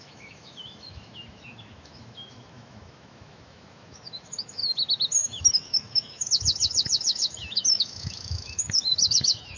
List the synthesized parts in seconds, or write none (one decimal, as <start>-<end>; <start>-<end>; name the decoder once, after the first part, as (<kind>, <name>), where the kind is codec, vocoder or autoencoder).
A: 0.0-9.6 (autoencoder, DAC-VAE)